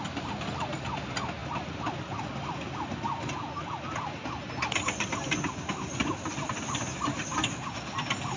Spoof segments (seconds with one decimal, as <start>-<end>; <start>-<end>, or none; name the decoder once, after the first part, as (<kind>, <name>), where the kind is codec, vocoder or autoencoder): none